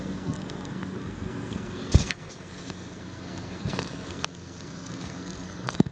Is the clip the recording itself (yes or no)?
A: no